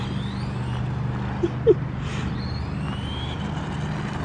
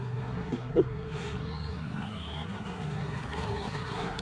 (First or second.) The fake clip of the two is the second